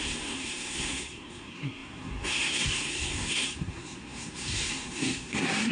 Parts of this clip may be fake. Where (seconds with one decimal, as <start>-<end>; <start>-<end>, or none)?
0.0-5.7